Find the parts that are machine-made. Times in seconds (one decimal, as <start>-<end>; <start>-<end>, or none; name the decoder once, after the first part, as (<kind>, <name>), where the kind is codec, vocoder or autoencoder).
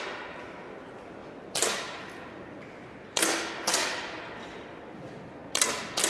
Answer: 0.0-5.4 (vocoder, BigVGAN v2)